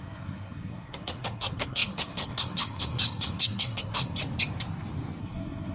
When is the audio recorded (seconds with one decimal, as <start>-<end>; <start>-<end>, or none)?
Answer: 4.2-5.2

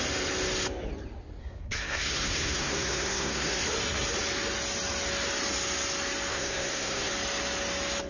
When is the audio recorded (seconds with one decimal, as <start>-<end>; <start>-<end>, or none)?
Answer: 0.0-1.4; 3.6-6.3; 7.1-8.1

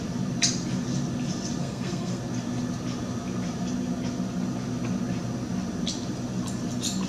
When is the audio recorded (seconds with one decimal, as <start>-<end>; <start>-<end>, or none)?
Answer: 0.0-1.6; 2.2-7.1

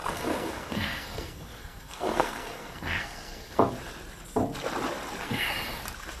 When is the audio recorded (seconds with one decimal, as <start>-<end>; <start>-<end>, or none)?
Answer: 3.7-5.2; 5.8-6.2